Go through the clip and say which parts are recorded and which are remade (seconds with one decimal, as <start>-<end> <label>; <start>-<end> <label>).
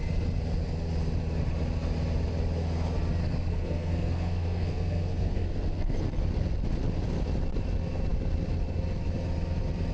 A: 0.0-3.2 recorded; 3.2-6.2 remade; 6.2-9.9 recorded